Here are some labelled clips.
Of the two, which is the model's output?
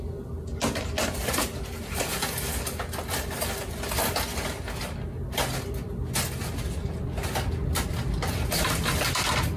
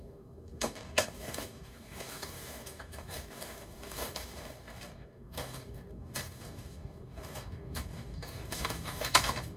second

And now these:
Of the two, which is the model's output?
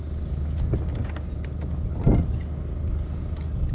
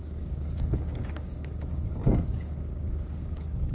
second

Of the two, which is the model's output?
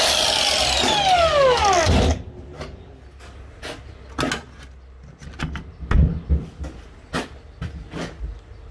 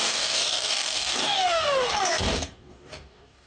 second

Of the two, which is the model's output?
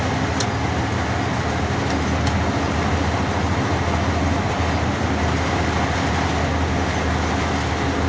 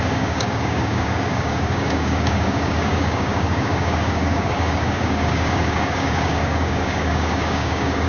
second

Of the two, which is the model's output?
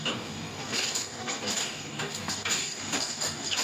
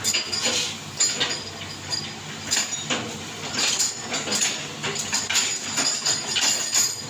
first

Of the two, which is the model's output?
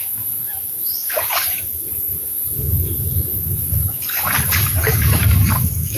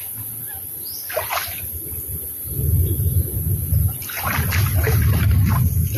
first